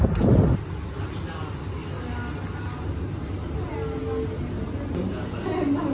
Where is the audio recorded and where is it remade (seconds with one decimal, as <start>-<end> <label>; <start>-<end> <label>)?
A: 0.0-5.9 recorded